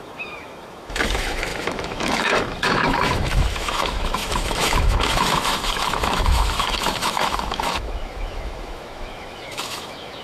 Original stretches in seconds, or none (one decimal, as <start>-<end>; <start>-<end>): none